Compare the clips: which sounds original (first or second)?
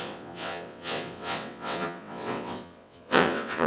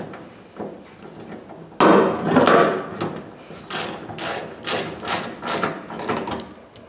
second